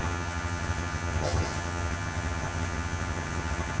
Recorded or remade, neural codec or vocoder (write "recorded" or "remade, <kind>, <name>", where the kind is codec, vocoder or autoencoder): remade, vocoder, HiFi-GAN